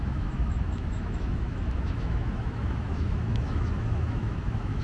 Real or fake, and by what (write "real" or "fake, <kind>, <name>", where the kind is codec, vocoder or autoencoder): fake, autoencoder, DAC-VAE